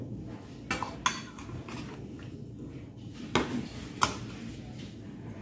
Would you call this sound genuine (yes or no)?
yes